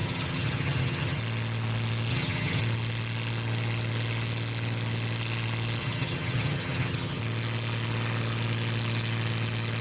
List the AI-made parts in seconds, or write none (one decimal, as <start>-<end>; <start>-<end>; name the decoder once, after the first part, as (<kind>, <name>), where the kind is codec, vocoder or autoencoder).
0.0-1.2 (vocoder, HiFi-GAN); 2.1-2.6; 5.8-7.2